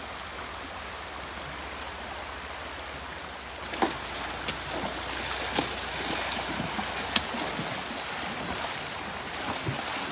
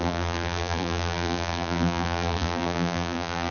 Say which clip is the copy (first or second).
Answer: second